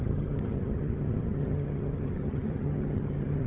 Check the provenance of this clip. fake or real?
fake